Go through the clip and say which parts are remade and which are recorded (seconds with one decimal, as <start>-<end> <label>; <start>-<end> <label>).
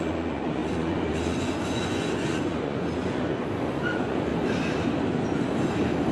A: 0.0-4.3 remade; 4.3-6.1 recorded